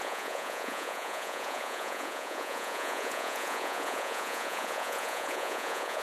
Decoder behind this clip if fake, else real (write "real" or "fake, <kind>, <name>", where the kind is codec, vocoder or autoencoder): fake, vocoder, Vocos